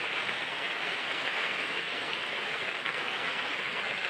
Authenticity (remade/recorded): remade